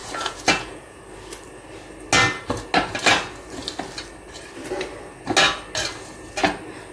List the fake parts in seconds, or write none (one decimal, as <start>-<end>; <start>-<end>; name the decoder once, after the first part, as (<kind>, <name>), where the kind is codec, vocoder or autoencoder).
0.0-1.0 (vocoder, Vocos)